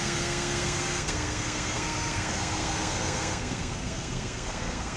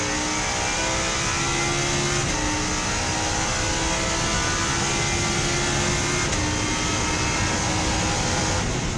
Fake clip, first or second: first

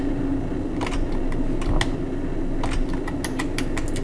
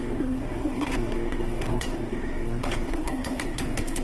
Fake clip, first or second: second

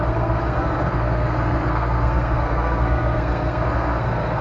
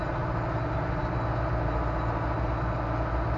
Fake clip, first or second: first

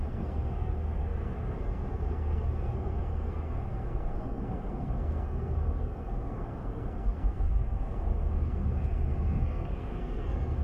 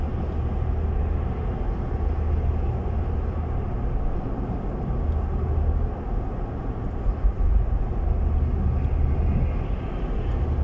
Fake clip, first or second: first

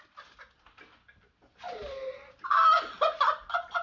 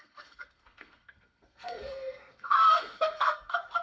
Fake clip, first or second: second